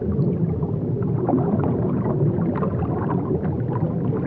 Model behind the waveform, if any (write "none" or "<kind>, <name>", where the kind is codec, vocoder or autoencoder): none